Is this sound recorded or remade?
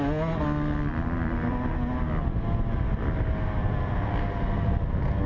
recorded